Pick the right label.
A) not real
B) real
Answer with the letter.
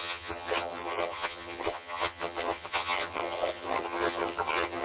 A